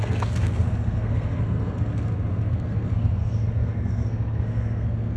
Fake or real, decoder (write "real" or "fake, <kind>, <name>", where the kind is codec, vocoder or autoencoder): fake, codec, SNAC